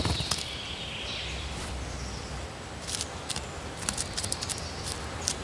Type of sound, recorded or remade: remade